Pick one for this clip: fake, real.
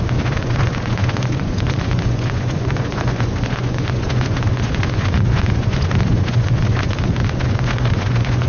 fake